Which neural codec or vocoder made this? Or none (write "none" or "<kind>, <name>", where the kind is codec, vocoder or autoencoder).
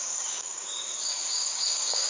codec, DAC